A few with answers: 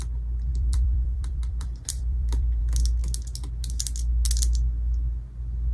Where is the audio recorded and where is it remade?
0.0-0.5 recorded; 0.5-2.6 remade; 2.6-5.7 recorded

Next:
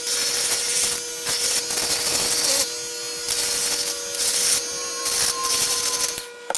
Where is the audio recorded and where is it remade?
0.0-6.6 recorded

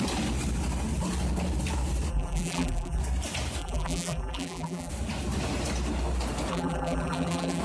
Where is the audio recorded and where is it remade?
0.0-2.1 recorded; 2.1-3.0 remade; 3.0-3.6 recorded; 3.6-4.9 remade; 4.9-6.5 recorded; 6.5-7.6 remade